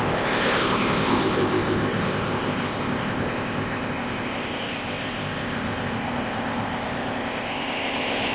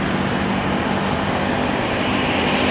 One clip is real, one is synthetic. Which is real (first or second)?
second